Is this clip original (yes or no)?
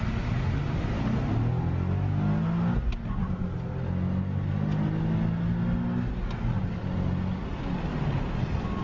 yes